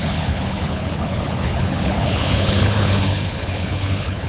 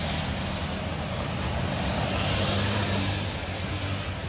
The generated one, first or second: first